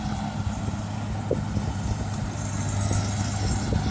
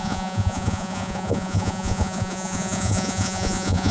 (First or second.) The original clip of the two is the first